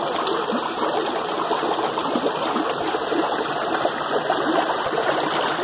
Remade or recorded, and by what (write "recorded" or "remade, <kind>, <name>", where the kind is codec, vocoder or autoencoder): recorded